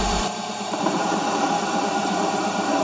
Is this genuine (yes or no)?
no